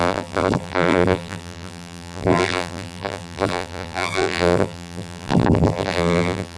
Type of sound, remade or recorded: remade